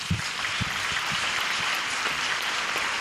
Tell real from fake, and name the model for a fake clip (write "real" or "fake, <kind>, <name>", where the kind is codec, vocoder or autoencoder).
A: fake, vocoder, BigVGAN v2